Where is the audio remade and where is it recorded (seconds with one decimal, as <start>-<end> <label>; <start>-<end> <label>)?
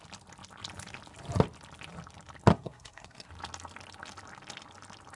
0.0-2.5 recorded; 2.5-3.3 remade; 3.3-5.2 recorded